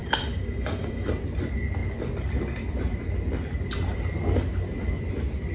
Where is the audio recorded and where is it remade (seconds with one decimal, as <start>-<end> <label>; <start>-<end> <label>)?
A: 0.0-1.1 remade; 1.1-5.5 recorded